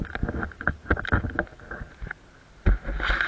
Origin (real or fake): real